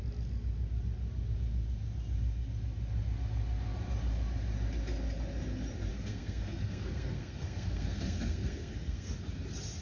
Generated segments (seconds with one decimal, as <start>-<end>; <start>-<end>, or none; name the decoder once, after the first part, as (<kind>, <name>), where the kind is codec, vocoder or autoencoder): 5.9-9.1 (codec, SNAC)